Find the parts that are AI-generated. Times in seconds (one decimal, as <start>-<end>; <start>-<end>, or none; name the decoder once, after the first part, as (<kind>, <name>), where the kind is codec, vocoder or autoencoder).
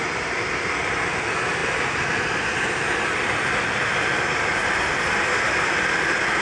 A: none